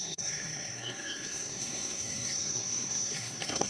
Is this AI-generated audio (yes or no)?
yes